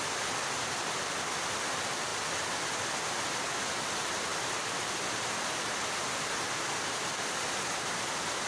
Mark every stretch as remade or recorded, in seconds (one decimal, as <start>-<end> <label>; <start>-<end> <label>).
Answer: 0.0-8.5 recorded